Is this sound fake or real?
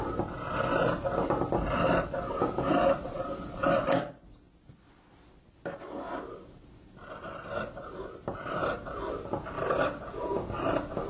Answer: real